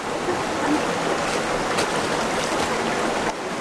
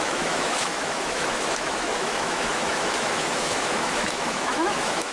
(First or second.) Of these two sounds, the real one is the first